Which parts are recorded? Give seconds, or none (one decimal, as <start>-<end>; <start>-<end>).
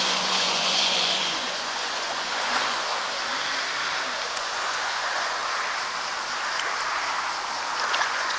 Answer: 2.9-4.3; 5.4-7.9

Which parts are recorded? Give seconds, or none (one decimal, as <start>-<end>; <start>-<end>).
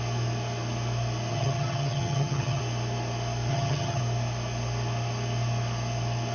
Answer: 0.0-1.3; 2.6-3.5; 4.0-6.3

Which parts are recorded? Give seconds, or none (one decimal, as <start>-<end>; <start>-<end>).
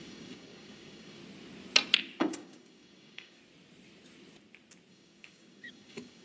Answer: 1.2-2.2; 3.4-4.9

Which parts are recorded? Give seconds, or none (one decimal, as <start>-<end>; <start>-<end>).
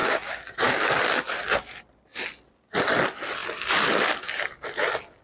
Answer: 0.8-5.2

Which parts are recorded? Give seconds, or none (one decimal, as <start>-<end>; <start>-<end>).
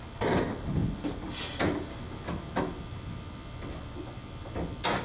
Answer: 0.0-5.0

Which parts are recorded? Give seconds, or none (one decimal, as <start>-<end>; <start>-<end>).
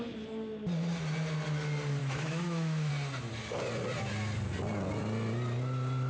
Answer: 0.0-2.0; 2.9-6.1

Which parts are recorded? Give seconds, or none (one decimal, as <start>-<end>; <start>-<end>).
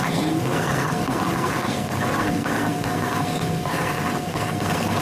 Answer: none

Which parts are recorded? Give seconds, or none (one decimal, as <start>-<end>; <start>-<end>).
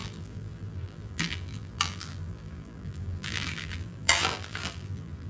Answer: none